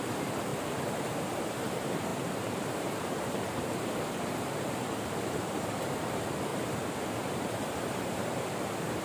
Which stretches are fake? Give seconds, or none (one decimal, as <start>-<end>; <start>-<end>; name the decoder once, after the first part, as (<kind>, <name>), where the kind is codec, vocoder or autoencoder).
0.0-6.5 (vocoder, BigVGAN v2); 7.2-9.0